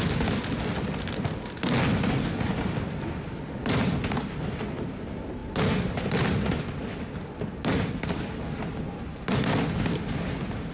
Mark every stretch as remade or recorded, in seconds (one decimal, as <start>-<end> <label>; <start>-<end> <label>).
0.0-10.7 recorded

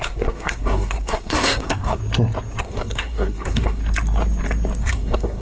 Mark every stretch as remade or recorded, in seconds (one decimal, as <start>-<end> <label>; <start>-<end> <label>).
0.0-2.0 remade; 2.0-2.6 recorded; 2.6-3.8 remade; 3.8-4.8 recorded; 4.8-5.4 remade

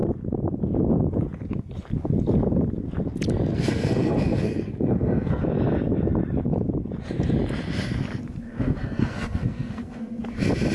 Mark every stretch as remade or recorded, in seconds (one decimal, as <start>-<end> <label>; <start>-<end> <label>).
0.0-3.5 recorded; 3.5-5.4 remade; 5.4-8.5 recorded; 8.5-10.2 remade; 10.2-10.7 recorded

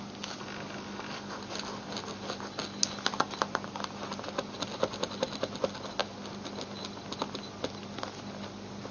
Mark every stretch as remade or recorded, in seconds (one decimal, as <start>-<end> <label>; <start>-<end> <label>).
0.0-8.9 recorded